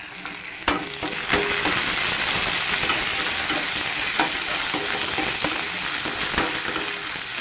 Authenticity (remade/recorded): recorded